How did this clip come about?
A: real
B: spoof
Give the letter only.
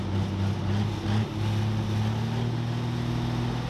A